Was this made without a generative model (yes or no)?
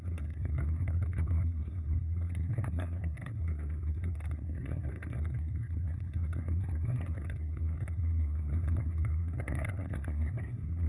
no